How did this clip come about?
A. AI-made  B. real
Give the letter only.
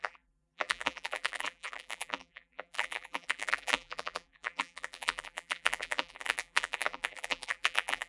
A